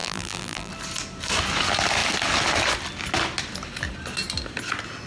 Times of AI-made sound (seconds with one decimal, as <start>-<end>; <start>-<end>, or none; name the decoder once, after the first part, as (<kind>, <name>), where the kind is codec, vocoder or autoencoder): 0.0-0.7 (vocoder, BigVGAN v2)